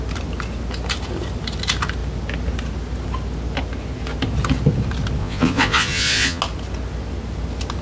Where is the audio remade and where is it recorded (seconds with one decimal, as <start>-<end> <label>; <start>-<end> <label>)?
0.0-5.2 recorded; 5.2-6.4 remade; 6.4-7.8 recorded